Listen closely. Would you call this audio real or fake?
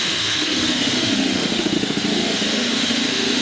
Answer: fake